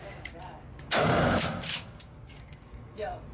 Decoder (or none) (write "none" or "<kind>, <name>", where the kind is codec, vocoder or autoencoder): codec, DAC